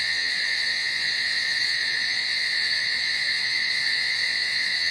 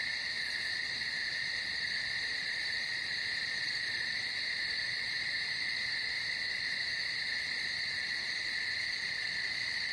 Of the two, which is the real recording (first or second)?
second